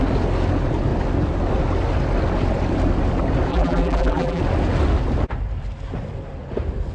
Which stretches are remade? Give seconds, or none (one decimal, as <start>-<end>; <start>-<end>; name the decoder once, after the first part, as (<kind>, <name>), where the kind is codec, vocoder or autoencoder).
3.5-4.4 (vocoder, BigVGAN v2)

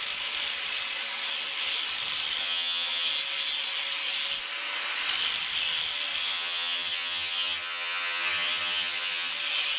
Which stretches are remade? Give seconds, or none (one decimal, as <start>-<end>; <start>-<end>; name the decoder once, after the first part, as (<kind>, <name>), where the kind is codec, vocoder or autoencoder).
2.4-3.1 (vocoder, HiFi-GAN); 6.2-9.3

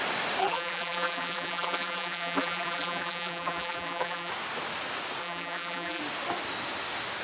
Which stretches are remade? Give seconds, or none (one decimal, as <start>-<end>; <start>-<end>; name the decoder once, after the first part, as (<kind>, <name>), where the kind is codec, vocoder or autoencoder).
0.4-4.3 (vocoder, BigVGAN v2); 5.2-6.0

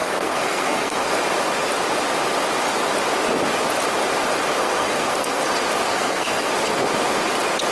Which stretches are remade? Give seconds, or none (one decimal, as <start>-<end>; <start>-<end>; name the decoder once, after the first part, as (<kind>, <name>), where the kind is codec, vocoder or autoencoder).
0.0-1.1 (codec, SNAC); 4.6-5.4; 5.9-6.5

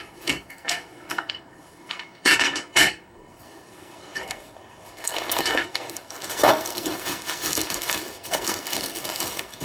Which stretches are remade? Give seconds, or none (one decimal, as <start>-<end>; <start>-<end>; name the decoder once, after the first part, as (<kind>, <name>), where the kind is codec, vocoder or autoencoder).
0.0-9.6 (codec, SNAC)